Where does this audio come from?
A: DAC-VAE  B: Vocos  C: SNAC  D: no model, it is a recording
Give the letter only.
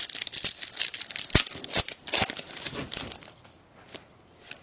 D